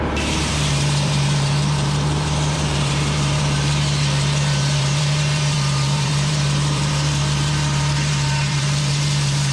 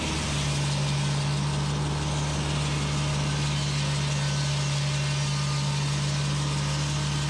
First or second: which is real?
second